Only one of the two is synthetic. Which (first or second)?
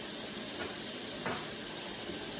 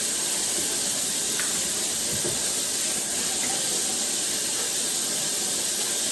second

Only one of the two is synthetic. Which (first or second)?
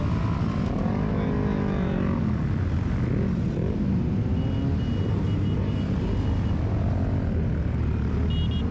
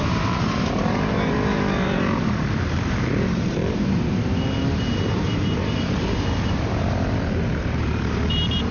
second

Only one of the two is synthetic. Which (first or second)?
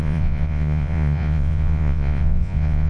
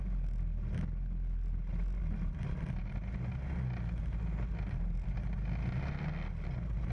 first